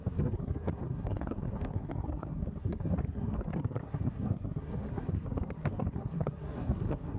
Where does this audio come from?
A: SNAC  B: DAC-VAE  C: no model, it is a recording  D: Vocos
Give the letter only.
A